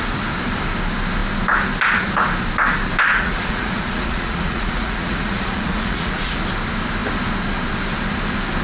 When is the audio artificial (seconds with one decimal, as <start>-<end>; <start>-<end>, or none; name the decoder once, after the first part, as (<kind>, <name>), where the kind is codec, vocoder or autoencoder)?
3.1-6.4 (vocoder, Vocos)